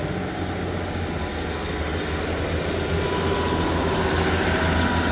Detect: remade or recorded recorded